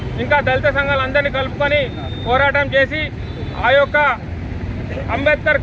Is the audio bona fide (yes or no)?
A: yes